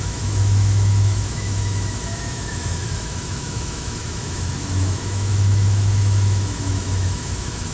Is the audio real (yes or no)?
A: no